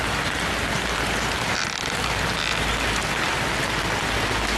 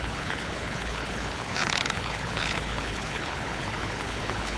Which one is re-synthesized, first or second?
second